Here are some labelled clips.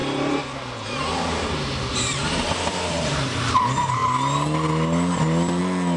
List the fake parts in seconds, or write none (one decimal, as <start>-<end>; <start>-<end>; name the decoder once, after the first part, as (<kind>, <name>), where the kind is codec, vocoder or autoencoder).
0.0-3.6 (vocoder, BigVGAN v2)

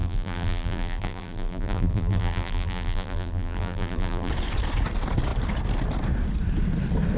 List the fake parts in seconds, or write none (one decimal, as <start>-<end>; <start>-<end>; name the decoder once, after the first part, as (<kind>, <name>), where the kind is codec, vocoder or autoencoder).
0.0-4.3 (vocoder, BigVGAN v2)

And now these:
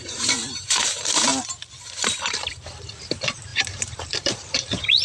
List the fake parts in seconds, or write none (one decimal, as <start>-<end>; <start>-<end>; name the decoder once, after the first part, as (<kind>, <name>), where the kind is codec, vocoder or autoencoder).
0.0-1.3 (vocoder, BigVGAN v2); 3.0-5.0